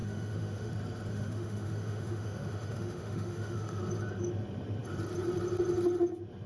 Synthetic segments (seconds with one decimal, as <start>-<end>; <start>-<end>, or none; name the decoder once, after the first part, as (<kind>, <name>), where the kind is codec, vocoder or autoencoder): 0.0-0.7 (autoencoder, DAC-VAE); 1.1-3.8